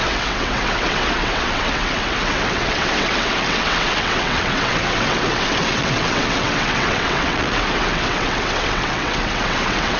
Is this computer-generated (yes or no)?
yes